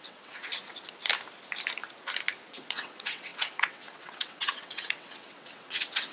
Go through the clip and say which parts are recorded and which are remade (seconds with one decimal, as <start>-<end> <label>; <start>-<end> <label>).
0.0-0.5 remade; 0.5-2.5 recorded; 2.5-6.1 remade